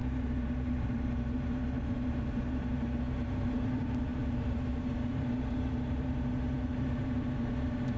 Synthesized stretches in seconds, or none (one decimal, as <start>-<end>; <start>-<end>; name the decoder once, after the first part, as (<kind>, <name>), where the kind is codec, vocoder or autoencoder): 0.0-8.0 (vocoder, BigVGAN v2)